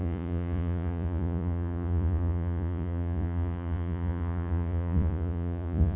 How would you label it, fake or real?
fake